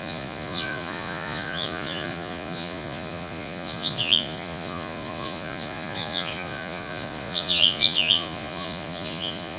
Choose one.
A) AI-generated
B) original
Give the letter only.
A